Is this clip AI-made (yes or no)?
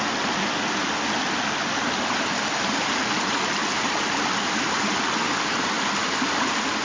no